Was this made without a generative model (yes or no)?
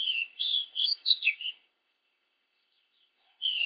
no